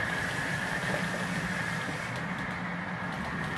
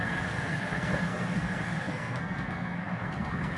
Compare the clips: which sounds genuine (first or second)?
first